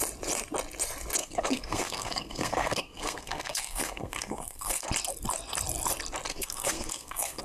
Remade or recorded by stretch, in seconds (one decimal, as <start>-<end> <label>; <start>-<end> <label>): 0.0-1.2 recorded; 1.2-4.9 remade; 4.9-6.3 recorded; 6.3-7.4 remade

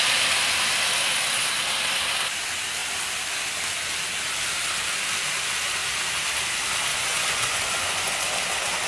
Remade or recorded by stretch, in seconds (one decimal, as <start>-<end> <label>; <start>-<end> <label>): 0.0-6.9 recorded; 6.9-8.1 remade; 8.1-8.9 recorded

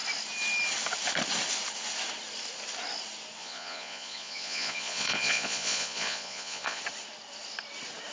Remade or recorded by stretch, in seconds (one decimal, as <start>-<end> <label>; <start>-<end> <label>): 0.0-3.4 recorded; 3.4-6.8 remade; 6.8-8.1 recorded

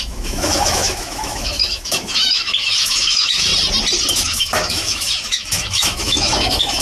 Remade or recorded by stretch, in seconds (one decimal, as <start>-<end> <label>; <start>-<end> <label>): 0.0-3.5 remade; 3.5-4.1 recorded; 4.1-6.8 remade

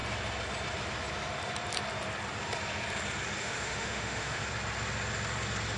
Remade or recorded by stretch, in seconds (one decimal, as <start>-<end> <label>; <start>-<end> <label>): 0.0-3.4 recorded; 3.4-4.4 remade; 4.4-5.8 recorded

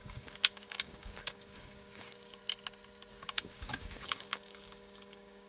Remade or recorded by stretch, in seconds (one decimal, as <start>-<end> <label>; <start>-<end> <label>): 0.0-2.4 remade; 2.4-3.1 recorded; 3.1-5.5 remade

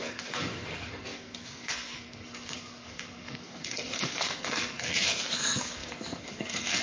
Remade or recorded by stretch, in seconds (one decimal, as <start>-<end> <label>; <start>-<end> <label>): 0.0-6.8 remade